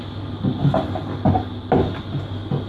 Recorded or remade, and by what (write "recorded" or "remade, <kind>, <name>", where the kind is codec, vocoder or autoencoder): recorded